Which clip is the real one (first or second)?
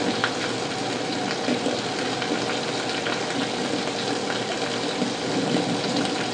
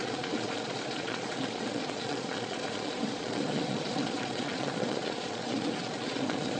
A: first